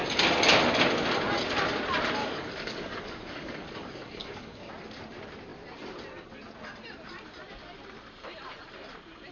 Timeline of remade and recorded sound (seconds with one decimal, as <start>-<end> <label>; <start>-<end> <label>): 0.0-2.2 recorded; 2.2-4.7 remade; 4.7-9.3 recorded